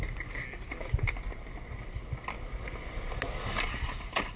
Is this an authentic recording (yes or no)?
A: yes